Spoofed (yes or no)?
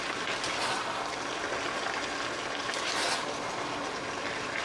no